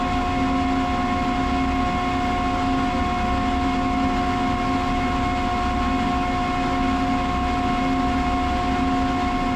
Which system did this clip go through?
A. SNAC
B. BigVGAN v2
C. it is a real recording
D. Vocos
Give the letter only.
C